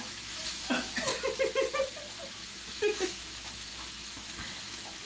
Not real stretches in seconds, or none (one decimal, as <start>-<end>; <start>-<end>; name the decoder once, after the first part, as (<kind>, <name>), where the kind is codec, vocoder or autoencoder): 0.0-1.1 (autoencoder, DAC-VAE); 2.3-5.1